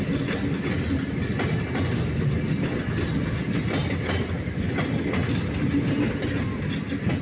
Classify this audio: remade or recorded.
recorded